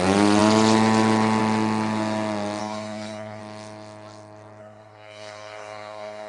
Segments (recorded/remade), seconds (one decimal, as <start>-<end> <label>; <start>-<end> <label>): 0.0-2.6 recorded; 2.6-3.4 remade; 3.4-4.6 recorded; 4.6-6.3 remade